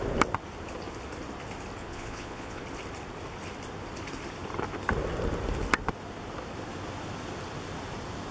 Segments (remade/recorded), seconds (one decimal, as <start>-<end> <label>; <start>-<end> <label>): 0.0-1.8 recorded; 1.8-2.6 remade; 2.6-8.3 recorded